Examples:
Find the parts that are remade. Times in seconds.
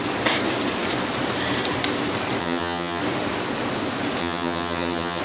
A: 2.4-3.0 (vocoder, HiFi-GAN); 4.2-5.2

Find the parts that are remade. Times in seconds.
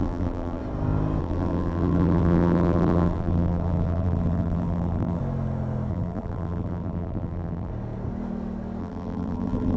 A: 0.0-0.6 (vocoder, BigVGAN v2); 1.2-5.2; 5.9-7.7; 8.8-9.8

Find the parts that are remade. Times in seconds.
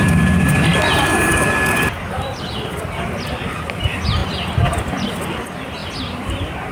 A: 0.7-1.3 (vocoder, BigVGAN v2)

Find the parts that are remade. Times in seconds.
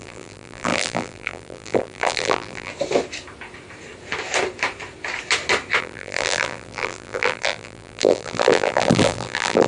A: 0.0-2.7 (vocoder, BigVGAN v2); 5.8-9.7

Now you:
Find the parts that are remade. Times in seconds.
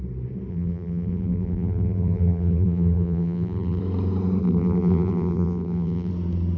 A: 0.5-3.8 (vocoder, BigVGAN v2); 4.4-6.1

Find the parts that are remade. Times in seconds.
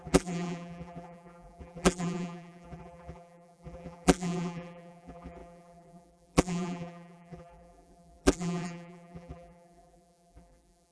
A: 0.0-10.9 (vocoder, BigVGAN v2)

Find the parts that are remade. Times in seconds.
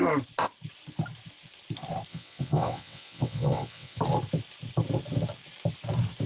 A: 2.1-4.0 (vocoder, WaveNeXt)